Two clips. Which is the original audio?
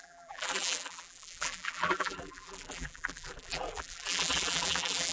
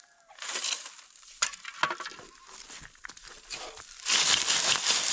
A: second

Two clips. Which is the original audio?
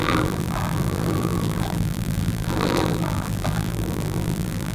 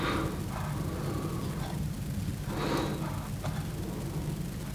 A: second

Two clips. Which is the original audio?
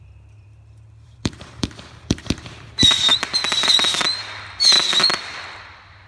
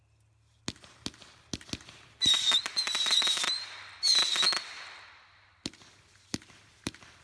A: second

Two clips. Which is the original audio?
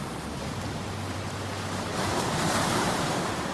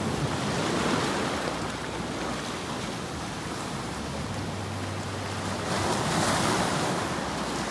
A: second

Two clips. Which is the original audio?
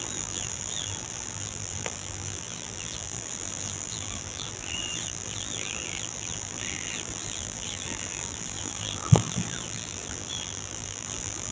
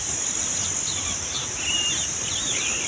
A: second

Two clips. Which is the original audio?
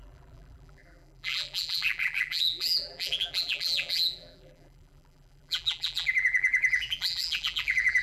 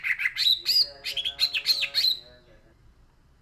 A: second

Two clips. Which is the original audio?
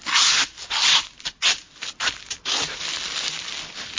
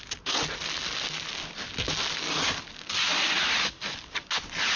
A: second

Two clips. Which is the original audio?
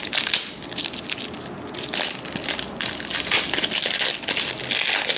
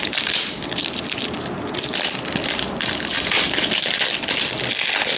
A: first